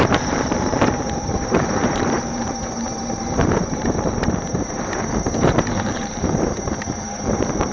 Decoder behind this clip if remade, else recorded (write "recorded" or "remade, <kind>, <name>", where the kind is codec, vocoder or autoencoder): remade, vocoder, BigVGAN v2